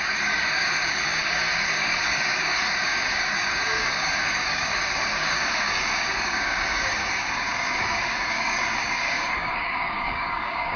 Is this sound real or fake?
fake